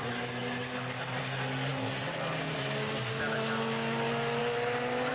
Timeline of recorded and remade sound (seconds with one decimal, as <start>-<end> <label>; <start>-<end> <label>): 0.0-5.1 recorded